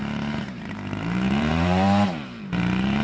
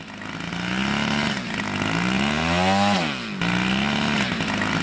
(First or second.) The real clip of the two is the second